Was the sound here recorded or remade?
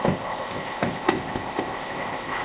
remade